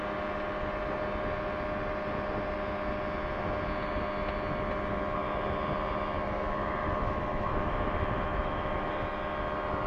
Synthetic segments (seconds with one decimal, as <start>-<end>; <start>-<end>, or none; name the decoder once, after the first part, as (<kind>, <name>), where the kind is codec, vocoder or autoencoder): 6.8-8.9 (autoencoder, DAC-VAE)